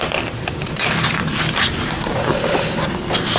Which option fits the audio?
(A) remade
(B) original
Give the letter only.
B